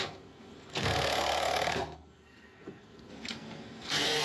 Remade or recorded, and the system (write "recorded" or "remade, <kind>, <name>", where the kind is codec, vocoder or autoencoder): remade, codec, SNAC